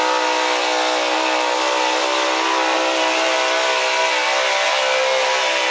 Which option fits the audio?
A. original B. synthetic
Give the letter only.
A